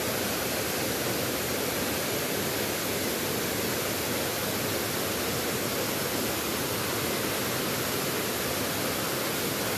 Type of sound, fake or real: real